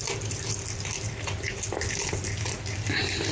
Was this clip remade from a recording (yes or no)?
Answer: no